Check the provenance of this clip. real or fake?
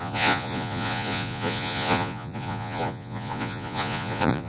fake